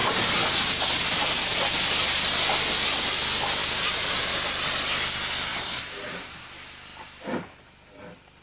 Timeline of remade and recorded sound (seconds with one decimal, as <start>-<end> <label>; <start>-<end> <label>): 0.0-1.6 remade; 1.6-3.6 recorded; 3.6-4.3 remade; 4.3-5.5 recorded; 5.5-6.4 remade; 6.4-8.4 recorded

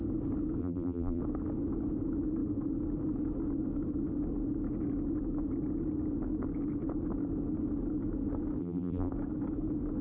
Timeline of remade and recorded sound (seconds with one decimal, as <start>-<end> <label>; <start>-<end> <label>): 0.0-0.6 recorded; 0.6-1.2 remade; 1.2-8.6 recorded; 8.6-9.1 remade; 9.1-10.0 recorded

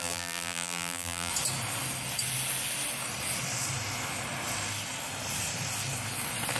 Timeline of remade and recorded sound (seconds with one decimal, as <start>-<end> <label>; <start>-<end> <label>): 0.0-1.3 remade; 1.3-6.6 recorded

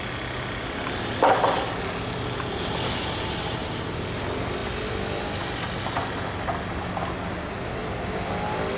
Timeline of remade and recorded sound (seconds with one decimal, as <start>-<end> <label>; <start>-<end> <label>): 0.0-7.8 recorded; 7.8-8.3 remade; 8.3-8.8 recorded